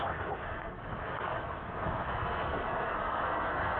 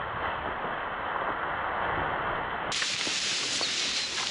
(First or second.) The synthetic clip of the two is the first